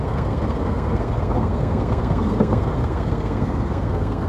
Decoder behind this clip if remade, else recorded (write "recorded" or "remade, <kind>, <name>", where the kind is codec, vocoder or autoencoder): remade, codec, SNAC